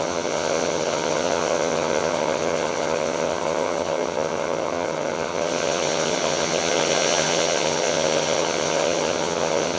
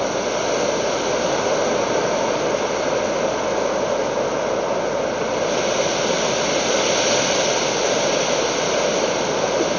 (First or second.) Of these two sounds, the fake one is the first